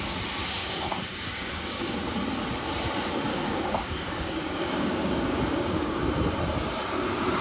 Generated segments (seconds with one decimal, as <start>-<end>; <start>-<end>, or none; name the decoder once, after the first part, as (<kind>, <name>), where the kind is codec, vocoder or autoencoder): 0.4-2.1 (codec, DAC); 3.3-6.0

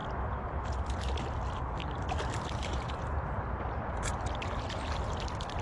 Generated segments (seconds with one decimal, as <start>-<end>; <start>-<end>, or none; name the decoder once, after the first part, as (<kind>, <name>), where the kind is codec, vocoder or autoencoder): none